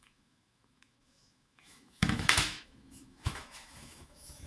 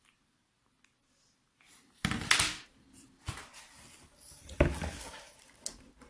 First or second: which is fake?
first